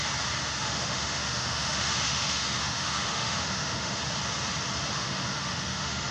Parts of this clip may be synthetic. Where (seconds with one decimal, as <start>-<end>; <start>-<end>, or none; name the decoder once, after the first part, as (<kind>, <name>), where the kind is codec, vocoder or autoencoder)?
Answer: 0.6-4.0 (autoencoder, DAC-VAE); 4.9-6.1